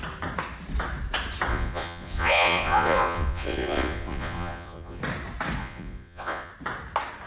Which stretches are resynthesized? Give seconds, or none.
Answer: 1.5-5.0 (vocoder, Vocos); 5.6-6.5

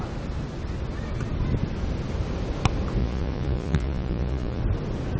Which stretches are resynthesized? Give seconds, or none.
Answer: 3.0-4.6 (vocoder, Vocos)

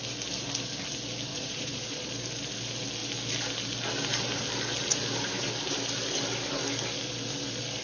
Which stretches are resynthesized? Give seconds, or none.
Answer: 1.3-2.1 (vocoder, Vocos)

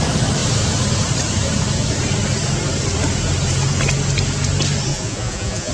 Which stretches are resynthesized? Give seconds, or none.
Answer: 4.9-5.7 (vocoder, Vocos)